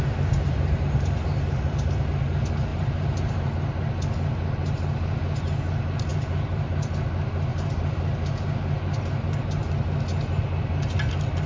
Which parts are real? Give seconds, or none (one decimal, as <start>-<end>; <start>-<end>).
0.0-2.7; 3.5-6.1; 6.7-7.5; 9.7-11.5